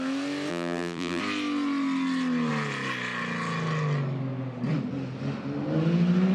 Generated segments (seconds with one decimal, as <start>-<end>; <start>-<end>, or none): 0.5-1.2